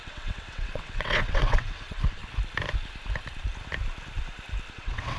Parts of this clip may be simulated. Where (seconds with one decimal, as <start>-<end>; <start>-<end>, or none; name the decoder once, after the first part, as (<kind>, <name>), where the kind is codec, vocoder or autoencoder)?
0.0-2.2 (vocoder, WaveNeXt); 4.7-5.2